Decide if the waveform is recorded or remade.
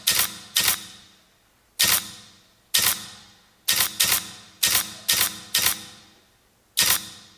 recorded